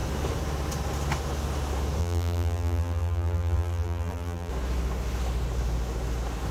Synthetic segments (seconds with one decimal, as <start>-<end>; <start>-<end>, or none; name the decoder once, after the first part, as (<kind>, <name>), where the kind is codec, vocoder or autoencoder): 2.0-4.5 (vocoder, BigVGAN v2)